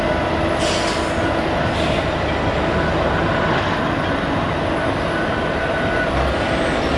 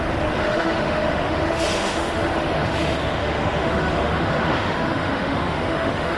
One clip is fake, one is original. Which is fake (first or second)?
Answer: second